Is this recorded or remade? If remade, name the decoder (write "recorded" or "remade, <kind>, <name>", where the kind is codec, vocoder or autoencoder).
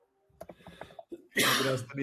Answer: recorded